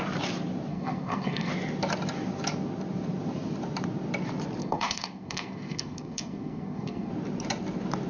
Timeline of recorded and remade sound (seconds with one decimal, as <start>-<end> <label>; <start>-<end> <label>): 0.0-0.7 recorded; 0.7-1.5 remade; 1.5-4.6 recorded; 4.6-7.1 remade; 7.1-8.1 recorded